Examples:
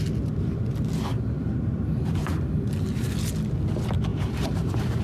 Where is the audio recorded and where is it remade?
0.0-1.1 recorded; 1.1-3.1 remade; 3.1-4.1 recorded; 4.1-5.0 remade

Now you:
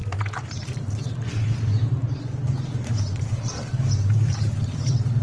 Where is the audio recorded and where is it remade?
0.0-5.2 remade

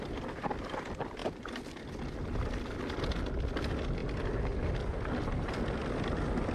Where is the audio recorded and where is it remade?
0.0-6.5 recorded

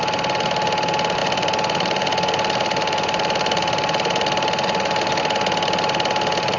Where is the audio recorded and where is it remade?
0.0-1.2 recorded; 1.2-5.2 remade; 5.2-6.6 recorded

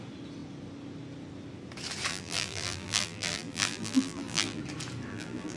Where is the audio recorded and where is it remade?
0.0-2.1 recorded; 2.1-4.6 remade; 4.6-5.1 recorded; 5.1-5.6 remade